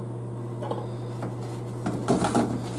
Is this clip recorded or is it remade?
recorded